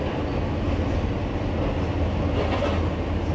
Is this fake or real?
real